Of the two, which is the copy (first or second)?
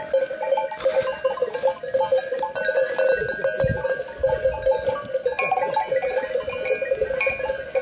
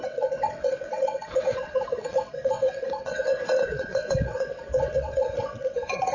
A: second